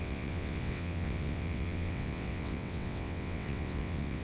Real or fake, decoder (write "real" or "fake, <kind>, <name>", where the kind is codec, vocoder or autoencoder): fake, vocoder, WaveNeXt